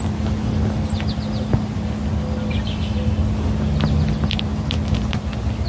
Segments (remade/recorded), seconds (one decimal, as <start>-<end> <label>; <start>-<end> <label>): 0.0-5.7 recorded